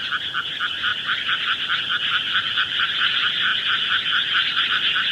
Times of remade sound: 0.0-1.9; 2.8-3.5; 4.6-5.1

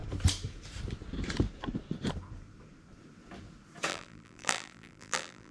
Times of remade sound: 3.9-5.5